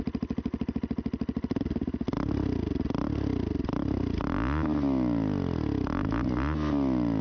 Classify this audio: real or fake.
real